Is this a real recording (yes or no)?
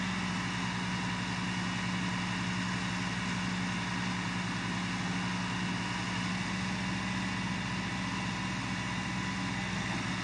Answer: yes